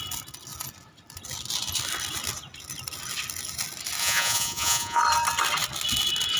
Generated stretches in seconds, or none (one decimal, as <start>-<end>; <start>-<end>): 4.0-5.0